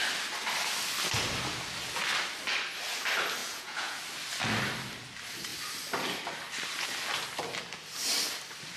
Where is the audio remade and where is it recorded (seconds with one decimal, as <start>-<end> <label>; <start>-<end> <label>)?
0.0-3.4 recorded; 3.4-4.0 remade; 4.0-8.8 recorded